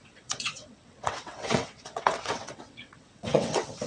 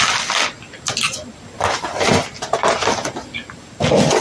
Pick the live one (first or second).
second